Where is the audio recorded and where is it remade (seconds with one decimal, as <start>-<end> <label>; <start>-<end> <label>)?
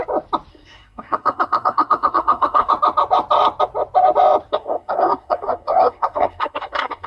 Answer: 0.0-0.5 recorded; 0.5-2.7 remade; 2.7-4.5 recorded; 4.5-7.1 remade